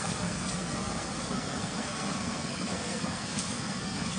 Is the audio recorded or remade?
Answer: remade